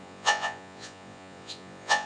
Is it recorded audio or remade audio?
remade